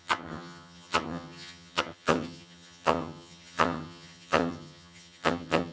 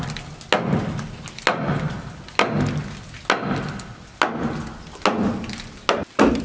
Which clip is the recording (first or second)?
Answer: second